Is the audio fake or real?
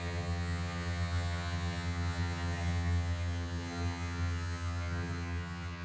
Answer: fake